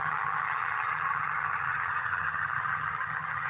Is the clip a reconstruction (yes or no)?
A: yes